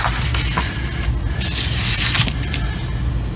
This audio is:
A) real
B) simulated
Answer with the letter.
A